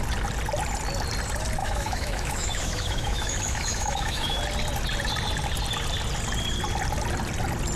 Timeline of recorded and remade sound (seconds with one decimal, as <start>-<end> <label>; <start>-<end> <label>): 0.0-1.6 recorded; 1.6-4.4 remade; 4.4-7.8 recorded